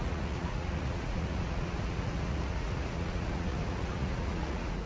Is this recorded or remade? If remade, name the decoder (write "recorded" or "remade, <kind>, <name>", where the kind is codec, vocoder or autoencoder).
remade, vocoder, Vocos